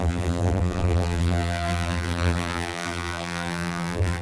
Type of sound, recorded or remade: remade